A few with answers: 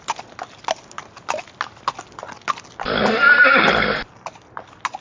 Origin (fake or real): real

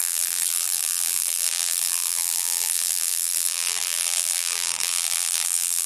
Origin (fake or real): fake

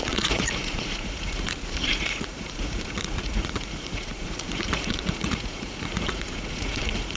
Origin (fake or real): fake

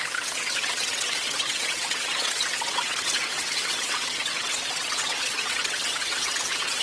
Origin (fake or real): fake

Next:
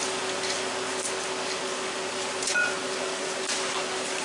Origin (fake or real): real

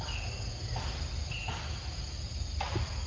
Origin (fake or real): real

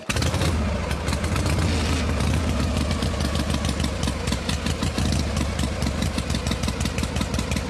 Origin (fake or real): real